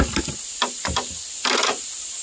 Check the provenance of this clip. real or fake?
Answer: real